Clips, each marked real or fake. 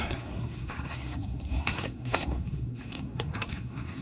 fake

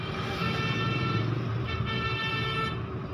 real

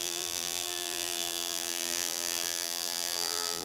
fake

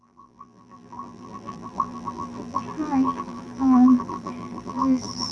fake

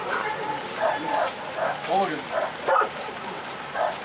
fake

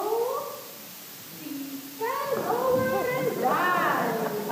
real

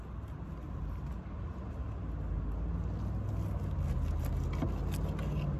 real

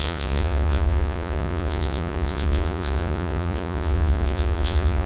fake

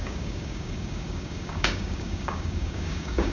fake